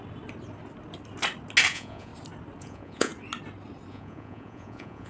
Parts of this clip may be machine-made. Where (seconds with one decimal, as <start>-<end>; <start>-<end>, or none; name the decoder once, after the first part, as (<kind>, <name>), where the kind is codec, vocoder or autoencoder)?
1.7-2.1 (vocoder, Vocos); 2.6-3.1; 3.9-5.1